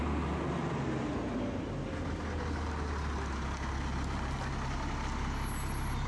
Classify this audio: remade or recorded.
recorded